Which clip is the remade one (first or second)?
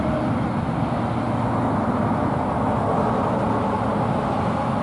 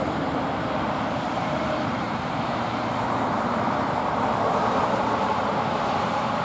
second